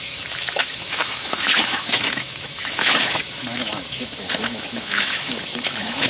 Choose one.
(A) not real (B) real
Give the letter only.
A